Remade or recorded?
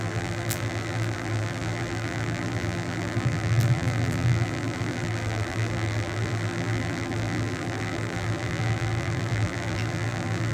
remade